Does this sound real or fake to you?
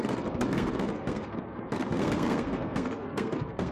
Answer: fake